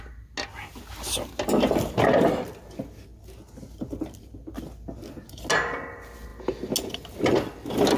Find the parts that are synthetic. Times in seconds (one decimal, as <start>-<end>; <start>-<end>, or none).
none